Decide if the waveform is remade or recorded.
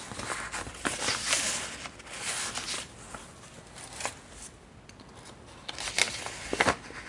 recorded